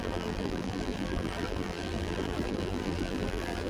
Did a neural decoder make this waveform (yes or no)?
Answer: yes